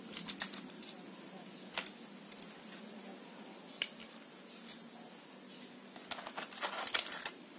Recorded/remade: recorded